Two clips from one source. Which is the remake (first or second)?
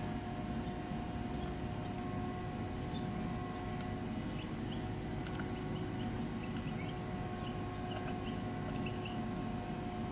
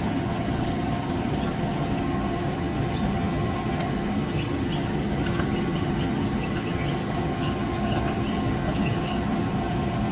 second